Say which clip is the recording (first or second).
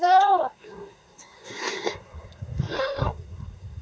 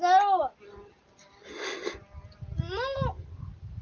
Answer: second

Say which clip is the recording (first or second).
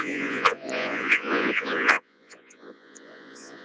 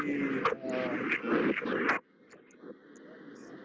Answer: second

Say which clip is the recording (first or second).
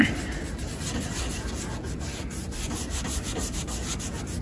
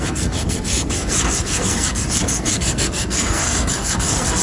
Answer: first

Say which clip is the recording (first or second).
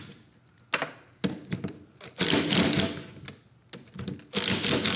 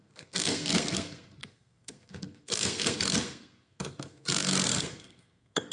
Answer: first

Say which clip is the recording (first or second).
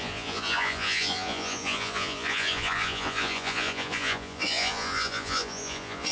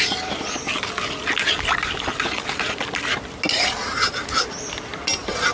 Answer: second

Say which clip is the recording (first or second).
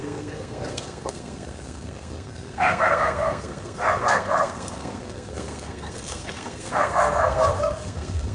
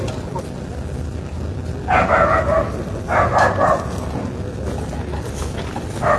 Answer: second